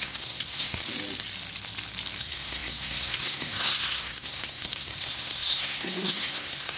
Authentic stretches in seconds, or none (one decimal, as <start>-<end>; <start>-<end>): 0.8-2.2